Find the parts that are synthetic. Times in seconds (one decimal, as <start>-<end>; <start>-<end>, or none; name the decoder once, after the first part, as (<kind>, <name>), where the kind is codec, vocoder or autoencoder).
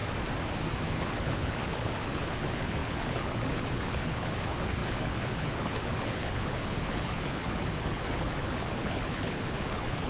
0.9-10.1 (codec, HILCodec)